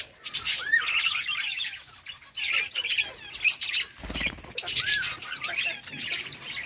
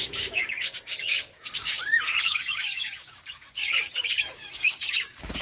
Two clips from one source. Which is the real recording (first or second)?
first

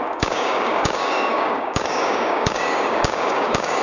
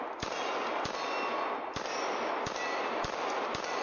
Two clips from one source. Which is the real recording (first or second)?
second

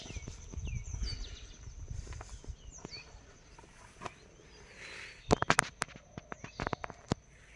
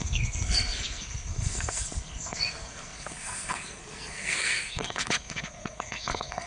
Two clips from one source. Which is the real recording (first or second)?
first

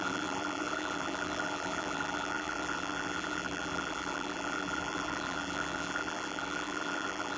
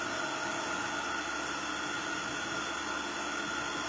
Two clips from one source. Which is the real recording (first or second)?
second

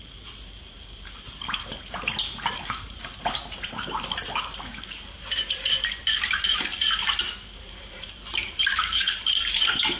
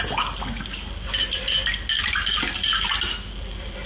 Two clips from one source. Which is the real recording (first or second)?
second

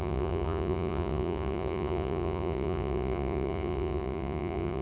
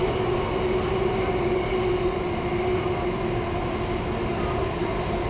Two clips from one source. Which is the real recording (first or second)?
second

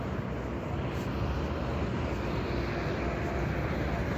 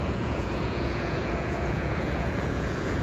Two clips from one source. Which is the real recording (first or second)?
first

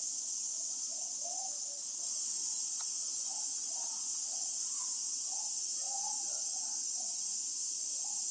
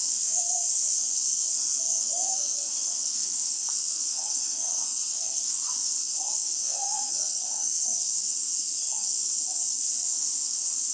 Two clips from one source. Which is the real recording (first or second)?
first